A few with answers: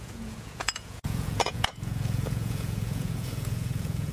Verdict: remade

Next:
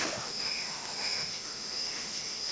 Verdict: remade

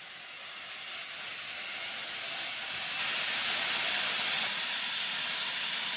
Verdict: recorded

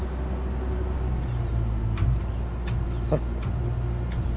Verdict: recorded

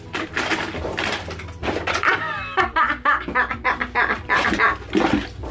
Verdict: recorded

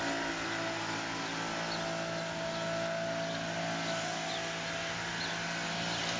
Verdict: recorded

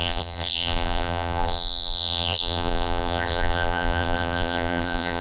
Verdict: remade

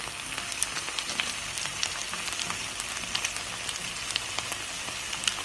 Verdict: recorded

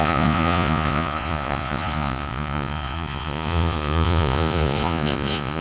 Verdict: remade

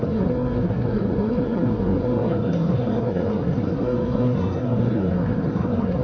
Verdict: remade